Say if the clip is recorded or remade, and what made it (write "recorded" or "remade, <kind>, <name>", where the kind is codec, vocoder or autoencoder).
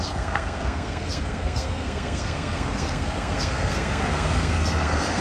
remade, codec, SNAC